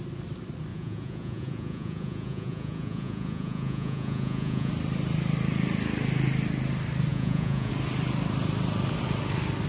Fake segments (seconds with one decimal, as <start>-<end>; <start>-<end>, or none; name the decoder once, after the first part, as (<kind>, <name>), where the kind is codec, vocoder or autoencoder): 0.7-4.7 (vocoder, Vocos); 7.1-7.7